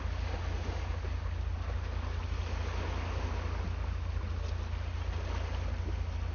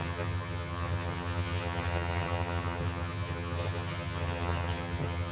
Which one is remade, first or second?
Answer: second